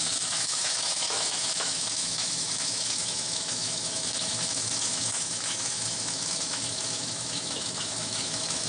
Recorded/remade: remade